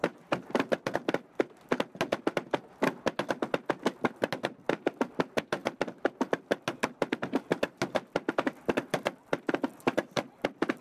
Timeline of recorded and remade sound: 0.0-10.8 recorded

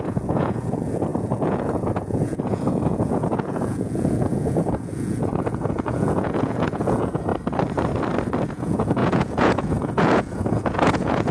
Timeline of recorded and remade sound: 0.0-7.3 remade; 7.3-8.5 recorded; 8.5-11.3 remade